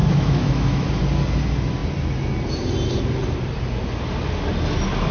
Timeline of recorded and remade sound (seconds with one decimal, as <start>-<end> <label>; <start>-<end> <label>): 0.0-0.9 remade; 0.9-5.1 recorded